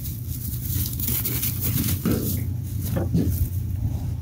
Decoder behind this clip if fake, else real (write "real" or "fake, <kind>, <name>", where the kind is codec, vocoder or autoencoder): fake, vocoder, BigVGAN v2